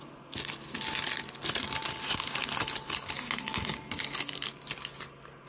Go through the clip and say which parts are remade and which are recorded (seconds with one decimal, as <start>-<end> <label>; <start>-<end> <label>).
0.0-5.5 recorded